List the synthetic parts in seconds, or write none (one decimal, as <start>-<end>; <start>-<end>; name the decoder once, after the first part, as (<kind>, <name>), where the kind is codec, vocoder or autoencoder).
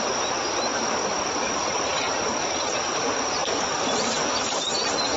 0.7-1.9 (vocoder, BigVGAN v2); 3.4-4.7